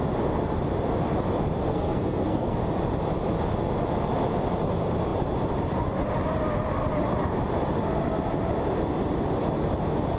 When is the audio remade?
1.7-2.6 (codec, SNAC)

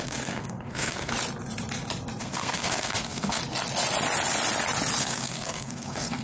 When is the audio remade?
0.0-1.1 (codec, SNAC); 2.2-3.4; 5.0-6.2

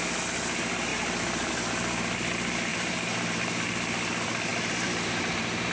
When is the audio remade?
0.9-1.5 (vocoder, BigVGAN v2); 2.7-3.6; 4.5-5.7

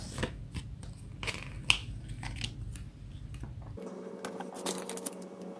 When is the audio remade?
none

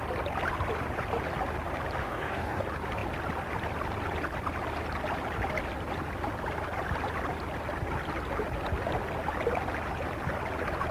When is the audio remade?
2.0-2.6 (codec, DAC)

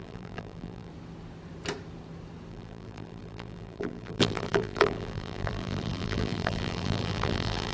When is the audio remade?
0.0-0.9 (vocoder, BigVGAN v2); 2.5-7.7

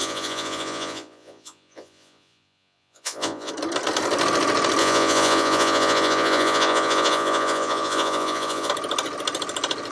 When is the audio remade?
0.0-3.5 (vocoder, Vocos); 4.8-8.7

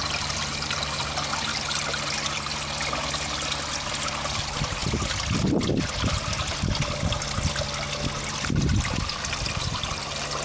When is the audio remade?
none